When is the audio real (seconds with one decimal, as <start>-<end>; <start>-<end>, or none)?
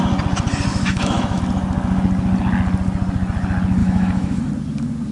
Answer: 0.0-0.7; 1.4-3.8; 4.5-5.1